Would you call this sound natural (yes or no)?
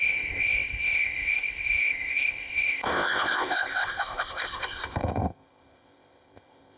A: no